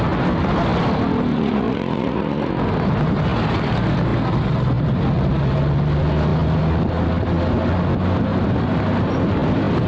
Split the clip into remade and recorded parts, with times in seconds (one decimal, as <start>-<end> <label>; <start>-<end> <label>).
0.0-1.3 recorded; 1.3-2.5 remade; 2.5-9.9 recorded